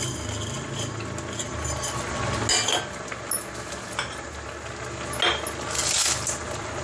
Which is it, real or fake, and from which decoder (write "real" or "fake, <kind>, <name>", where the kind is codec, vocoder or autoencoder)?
real